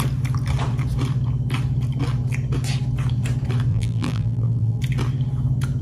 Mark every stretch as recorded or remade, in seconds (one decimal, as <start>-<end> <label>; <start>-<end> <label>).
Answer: 0.0-3.7 recorded; 3.7-4.8 remade; 4.8-5.8 recorded